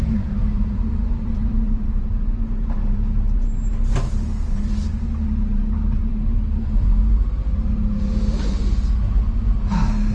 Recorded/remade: remade